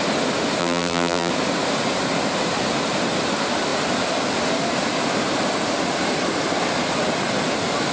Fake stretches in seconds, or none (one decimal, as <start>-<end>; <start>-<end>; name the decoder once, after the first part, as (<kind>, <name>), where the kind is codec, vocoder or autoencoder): 0.6-1.3 (vocoder, BigVGAN v2)